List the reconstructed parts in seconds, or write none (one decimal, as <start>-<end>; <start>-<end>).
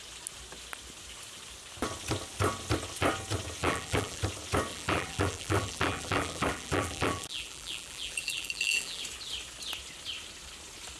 3.6-4.2; 4.7-9.0